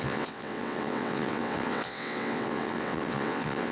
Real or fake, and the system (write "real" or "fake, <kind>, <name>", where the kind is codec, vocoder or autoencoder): fake, vocoder, WaveNeXt